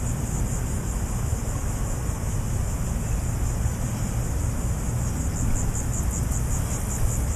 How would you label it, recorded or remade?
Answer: recorded